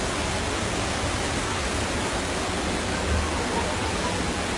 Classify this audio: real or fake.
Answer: real